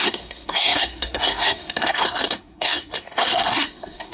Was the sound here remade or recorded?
remade